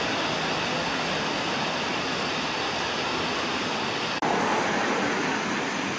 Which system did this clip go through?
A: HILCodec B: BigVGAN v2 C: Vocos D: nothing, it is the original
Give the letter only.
D